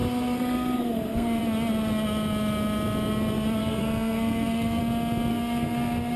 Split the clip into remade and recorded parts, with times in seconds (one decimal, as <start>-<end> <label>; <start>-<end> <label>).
0.0-1.4 remade; 1.4-3.6 recorded; 3.6-4.8 remade; 4.8-5.3 recorded; 5.3-6.2 remade